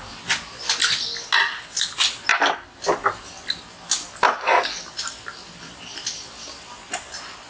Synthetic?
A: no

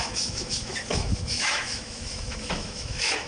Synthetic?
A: yes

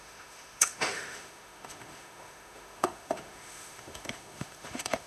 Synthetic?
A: yes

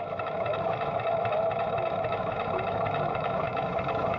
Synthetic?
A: yes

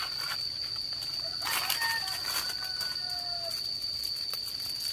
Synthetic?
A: no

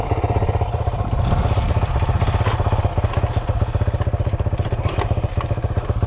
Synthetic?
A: no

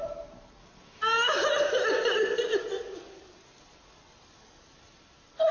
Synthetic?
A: no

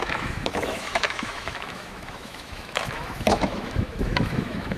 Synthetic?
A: yes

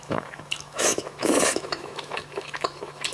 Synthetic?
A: yes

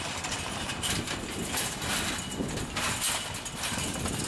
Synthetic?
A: no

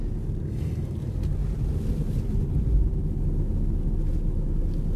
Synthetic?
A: no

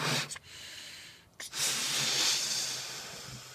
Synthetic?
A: no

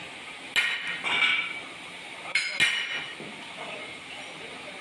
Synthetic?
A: no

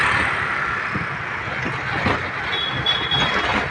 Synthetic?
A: no